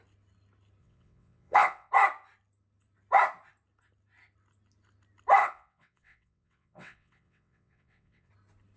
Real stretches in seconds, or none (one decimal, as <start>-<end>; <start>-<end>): 0.0-0.8; 1.9-5.4; 8.3-8.8